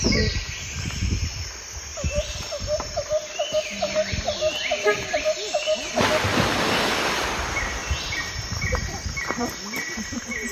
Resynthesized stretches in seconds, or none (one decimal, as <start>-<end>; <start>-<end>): 1.9-5.2; 7.8-10.5